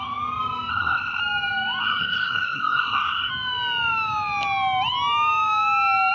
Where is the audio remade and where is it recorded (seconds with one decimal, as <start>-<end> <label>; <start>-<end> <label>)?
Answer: 0.0-0.7 recorded; 0.7-1.2 remade; 1.2-1.8 recorded; 1.8-3.3 remade; 3.3-6.1 recorded